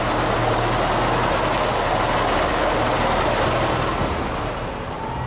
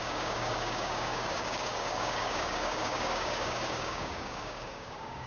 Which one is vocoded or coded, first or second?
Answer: second